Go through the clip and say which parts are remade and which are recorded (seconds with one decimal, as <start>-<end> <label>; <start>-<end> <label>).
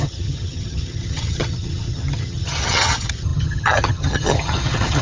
0.0-5.0 remade